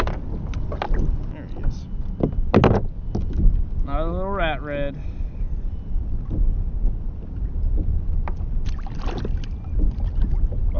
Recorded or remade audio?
recorded